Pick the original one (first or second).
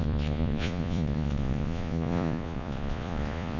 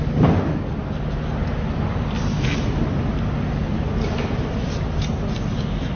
second